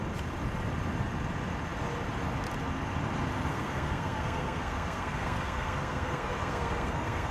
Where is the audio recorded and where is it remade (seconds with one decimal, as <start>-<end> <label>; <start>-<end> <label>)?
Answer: 0.0-3.5 recorded; 3.5-7.3 remade